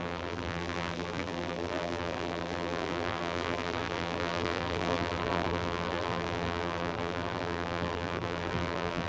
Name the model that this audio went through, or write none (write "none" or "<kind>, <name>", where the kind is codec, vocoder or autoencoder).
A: vocoder, BigVGAN v2